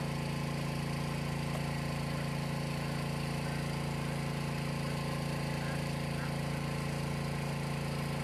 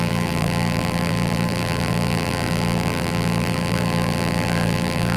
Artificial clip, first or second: second